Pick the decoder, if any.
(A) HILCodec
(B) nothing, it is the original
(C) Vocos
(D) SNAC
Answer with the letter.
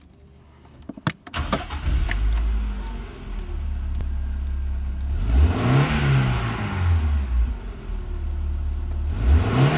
B